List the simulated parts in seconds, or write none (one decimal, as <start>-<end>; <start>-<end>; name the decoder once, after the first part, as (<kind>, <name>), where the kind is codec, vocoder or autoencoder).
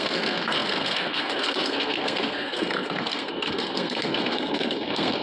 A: 0.0-5.2 (codec, SNAC)